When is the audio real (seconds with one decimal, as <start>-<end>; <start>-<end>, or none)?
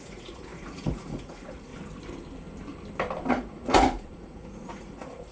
1.7-3.3